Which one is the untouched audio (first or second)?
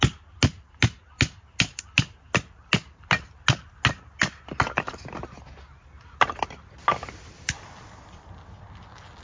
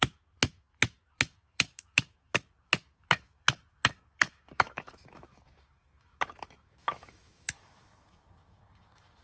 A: first